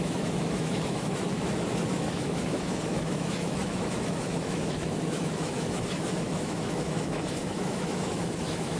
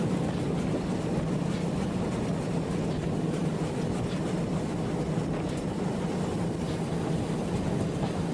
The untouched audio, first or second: second